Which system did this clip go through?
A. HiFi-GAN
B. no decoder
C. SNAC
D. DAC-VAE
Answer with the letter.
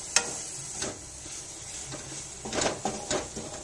B